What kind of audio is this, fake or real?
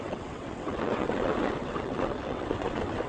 fake